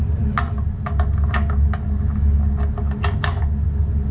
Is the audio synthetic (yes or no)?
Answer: no